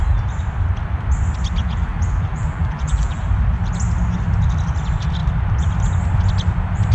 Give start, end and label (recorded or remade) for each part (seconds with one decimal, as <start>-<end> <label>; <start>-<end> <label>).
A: 0.0-1.6 recorded; 1.6-3.2 remade; 3.2-6.9 recorded